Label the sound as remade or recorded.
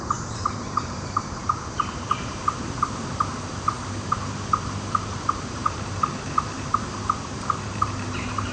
remade